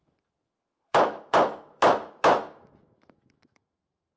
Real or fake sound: fake